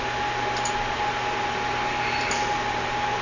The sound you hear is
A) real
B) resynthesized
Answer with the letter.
A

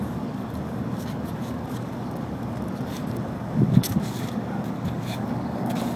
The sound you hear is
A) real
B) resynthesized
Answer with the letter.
B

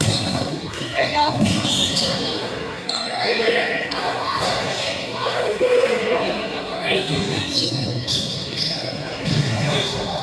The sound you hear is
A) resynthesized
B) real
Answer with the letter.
A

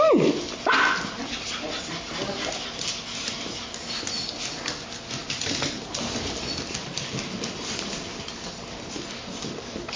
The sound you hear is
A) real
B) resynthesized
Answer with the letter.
A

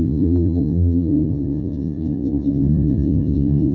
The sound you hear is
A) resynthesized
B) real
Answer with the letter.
A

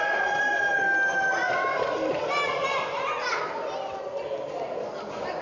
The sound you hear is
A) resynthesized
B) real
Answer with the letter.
B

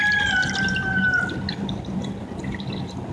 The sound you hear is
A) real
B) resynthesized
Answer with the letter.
A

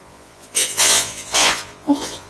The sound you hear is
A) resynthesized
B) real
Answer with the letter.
A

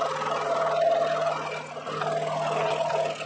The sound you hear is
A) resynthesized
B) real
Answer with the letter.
B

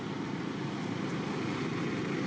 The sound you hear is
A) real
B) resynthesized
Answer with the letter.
A